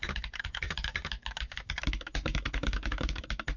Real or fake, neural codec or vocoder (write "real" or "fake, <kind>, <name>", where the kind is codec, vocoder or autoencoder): fake, autoencoder, DAC-VAE